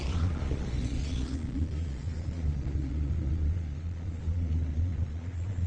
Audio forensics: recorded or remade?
remade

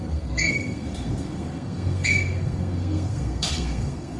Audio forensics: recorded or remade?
remade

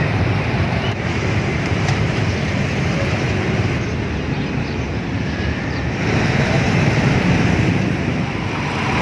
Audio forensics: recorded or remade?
remade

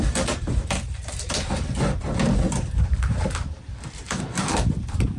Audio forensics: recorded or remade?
remade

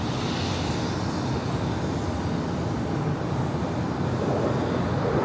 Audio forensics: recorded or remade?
recorded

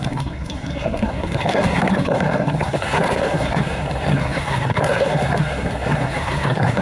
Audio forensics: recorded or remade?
remade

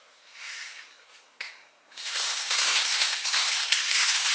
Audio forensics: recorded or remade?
remade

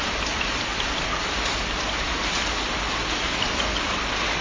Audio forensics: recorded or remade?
recorded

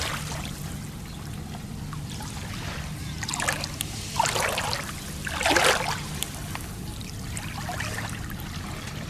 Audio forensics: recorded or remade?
recorded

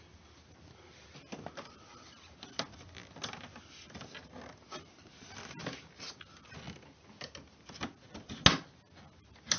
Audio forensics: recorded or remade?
recorded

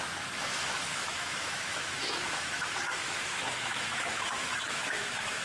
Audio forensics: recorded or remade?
remade